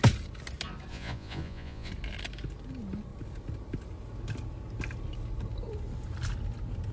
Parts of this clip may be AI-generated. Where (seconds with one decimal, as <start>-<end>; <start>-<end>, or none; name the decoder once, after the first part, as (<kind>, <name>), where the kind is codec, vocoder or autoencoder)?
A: 0.9-1.9 (vocoder, Vocos)